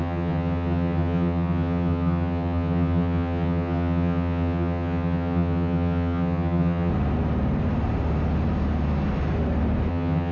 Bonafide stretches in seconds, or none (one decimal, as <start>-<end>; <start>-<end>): 6.9-9.9